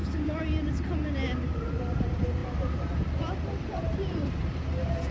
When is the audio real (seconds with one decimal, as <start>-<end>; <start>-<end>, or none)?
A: none